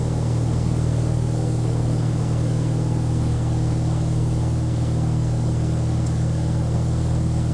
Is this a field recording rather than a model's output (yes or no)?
no